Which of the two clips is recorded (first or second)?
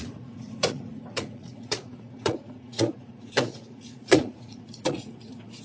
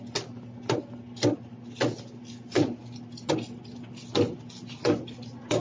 second